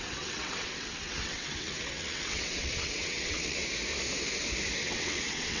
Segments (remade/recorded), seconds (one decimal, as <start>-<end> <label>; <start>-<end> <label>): 0.0-3.6 remade; 3.6-4.8 recorded; 4.8-5.6 remade